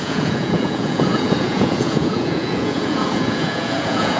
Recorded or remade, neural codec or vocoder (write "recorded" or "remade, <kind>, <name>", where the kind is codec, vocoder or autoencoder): remade, vocoder, Vocos